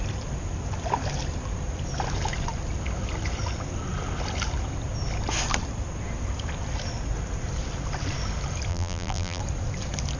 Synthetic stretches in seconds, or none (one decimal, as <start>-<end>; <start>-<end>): 8.7-9.4